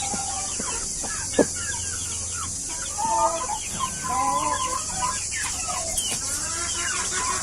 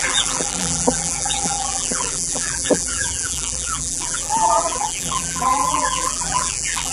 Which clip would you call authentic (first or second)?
first